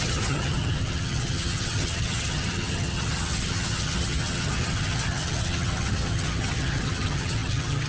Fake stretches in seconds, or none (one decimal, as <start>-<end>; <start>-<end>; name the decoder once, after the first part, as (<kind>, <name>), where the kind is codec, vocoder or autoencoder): 0.0-7.9 (vocoder, HiFi-GAN)